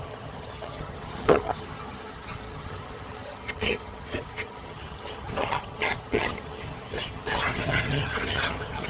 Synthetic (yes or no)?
yes